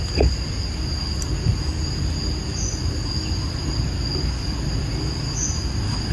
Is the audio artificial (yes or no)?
no